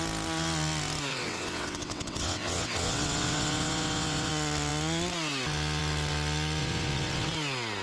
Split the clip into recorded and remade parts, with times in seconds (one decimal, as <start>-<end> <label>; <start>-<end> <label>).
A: 0.0-1.1 recorded; 1.1-4.3 remade; 4.3-6.6 recorded; 6.6-7.3 remade; 7.3-7.8 recorded